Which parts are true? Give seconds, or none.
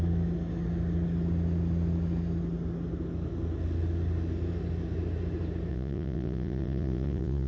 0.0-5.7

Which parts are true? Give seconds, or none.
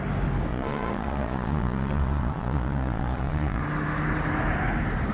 0.0-0.5; 3.6-5.1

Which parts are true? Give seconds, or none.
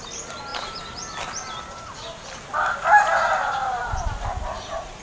0.0-5.0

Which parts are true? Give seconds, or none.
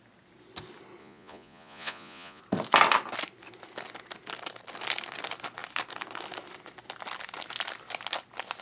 0.0-1.0; 2.4-8.6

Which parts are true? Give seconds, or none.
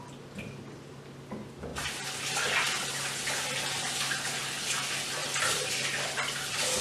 0.0-6.8